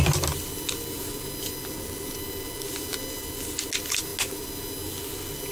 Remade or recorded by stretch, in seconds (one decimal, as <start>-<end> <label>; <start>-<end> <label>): 0.0-5.5 recorded